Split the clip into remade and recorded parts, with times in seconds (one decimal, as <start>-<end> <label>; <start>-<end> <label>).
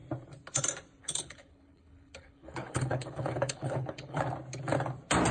0.0-1.0 recorded; 1.0-4.2 remade; 4.2-5.3 recorded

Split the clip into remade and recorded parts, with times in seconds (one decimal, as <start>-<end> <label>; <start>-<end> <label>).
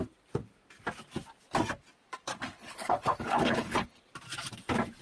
0.0-2.6 recorded; 2.6-4.0 remade; 4.0-5.0 recorded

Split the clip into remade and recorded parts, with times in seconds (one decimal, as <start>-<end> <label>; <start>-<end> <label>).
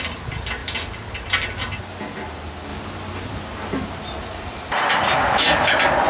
0.0-6.1 recorded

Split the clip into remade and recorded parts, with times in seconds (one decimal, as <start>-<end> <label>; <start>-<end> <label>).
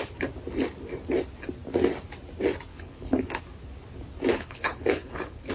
0.0-2.7 recorded; 2.7-3.4 remade; 3.4-4.3 recorded; 4.3-5.5 remade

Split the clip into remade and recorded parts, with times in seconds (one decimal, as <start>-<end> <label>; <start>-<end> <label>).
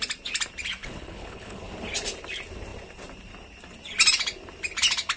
0.0-0.8 recorded; 0.8-1.6 remade; 1.6-5.2 recorded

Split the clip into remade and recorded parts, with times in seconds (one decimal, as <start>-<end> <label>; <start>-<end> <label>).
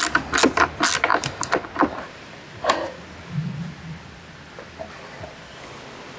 0.0-6.2 recorded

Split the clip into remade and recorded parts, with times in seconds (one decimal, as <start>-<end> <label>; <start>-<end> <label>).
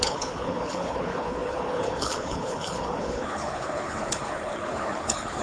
0.0-5.4 remade